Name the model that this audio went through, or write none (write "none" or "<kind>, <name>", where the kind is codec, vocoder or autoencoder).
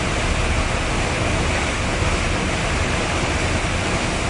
none